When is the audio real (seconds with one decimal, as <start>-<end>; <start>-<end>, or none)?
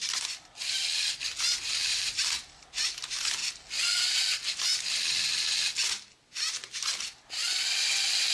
0.0-1.9; 2.8-8.3